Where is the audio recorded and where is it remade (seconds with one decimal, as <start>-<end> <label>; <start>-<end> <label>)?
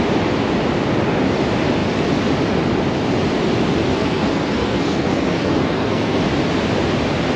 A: 0.0-3.9 recorded; 3.9-6.2 remade; 6.2-7.4 recorded